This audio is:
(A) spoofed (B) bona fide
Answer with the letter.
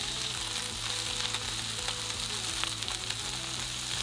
B